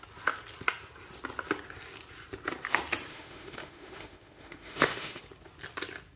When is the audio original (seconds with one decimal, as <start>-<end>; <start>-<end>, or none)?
0.0-3.1; 5.2-6.2